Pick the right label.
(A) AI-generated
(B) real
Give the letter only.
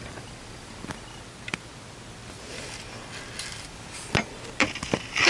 B